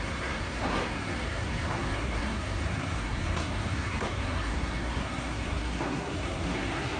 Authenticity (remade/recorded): remade